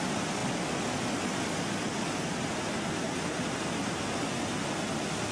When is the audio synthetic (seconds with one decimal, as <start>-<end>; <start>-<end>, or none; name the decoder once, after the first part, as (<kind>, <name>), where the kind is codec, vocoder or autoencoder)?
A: none